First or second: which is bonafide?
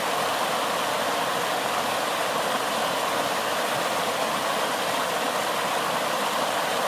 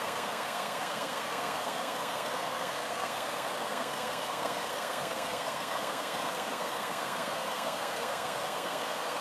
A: first